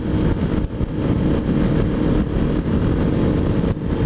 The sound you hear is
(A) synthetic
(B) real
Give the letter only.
B